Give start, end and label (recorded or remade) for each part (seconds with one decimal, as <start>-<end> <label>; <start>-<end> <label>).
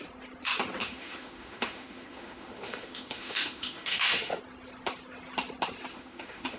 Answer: 0.0-0.8 recorded; 0.8-4.4 remade; 4.4-5.9 recorded; 5.9-6.6 remade